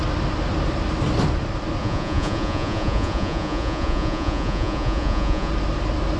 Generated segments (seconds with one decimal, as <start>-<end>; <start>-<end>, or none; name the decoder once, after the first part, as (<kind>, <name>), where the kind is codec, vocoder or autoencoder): 1.8-5.5 (vocoder, Vocos)